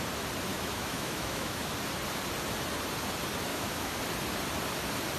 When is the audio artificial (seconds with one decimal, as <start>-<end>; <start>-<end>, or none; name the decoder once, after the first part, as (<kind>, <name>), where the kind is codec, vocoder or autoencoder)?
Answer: 0.5-1.7 (autoencoder, DAC-VAE); 3.5-4.0